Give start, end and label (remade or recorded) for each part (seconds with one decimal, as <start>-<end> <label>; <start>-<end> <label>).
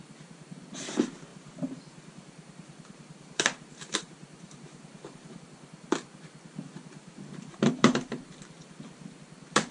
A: 0.0-1.3 recorded; 1.3-5.4 remade; 5.4-7.0 recorded; 7.0-8.5 remade; 8.5-9.7 recorded